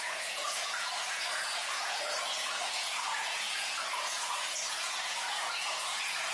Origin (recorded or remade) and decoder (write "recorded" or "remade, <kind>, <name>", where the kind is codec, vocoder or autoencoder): remade, vocoder, Vocos